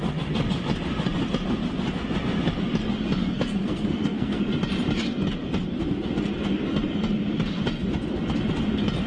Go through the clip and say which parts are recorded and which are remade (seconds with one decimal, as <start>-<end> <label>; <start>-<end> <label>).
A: 0.0-3.2 recorded; 3.2-4.4 remade; 4.4-9.1 recorded